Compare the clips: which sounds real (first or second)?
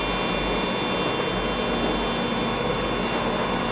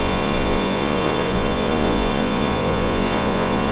first